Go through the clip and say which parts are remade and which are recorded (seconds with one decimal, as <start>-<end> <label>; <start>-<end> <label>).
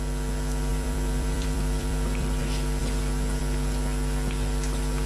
0.0-0.7 recorded; 0.7-2.4 remade; 2.4-5.1 recorded